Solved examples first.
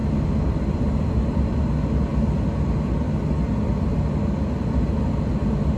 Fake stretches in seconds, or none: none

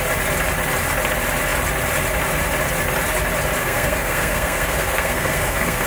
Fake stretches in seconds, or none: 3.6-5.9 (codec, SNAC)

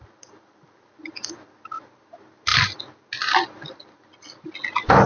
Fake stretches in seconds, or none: none

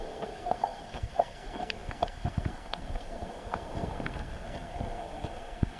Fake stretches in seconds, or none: 0.0-5.8 (codec, SNAC)

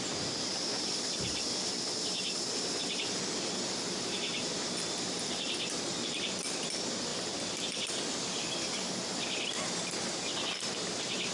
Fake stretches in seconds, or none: none

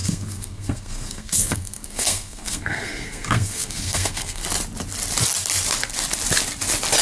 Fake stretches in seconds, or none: 0.0-4.4 (codec, SNAC)

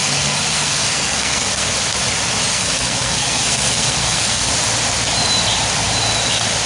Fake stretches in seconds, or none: 0.0-1.7 (codec, SNAC); 2.5-4.5